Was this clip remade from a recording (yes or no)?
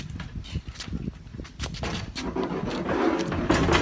no